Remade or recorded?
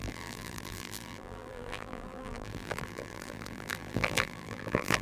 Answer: remade